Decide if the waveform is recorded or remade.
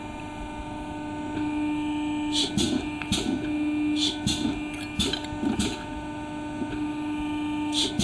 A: recorded